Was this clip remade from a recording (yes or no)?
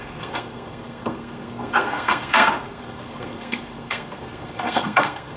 yes